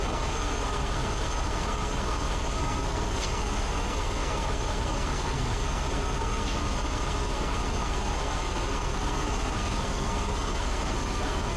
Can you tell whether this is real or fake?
fake